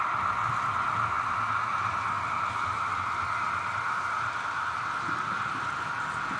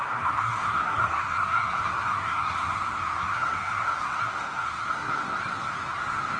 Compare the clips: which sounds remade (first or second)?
second